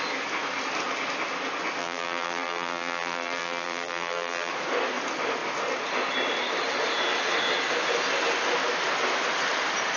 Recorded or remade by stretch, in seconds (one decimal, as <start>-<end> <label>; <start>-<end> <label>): 0.0-1.8 recorded; 1.8-4.5 remade; 4.5-10.0 recorded